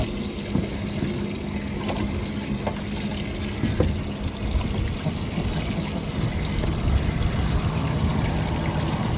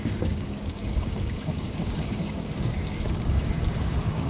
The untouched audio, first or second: first